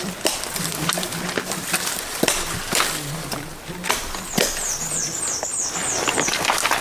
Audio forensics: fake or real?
real